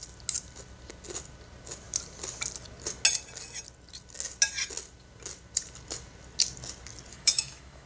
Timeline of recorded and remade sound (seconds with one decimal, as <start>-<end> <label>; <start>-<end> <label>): 0.0-7.1 recorded; 7.1-7.9 remade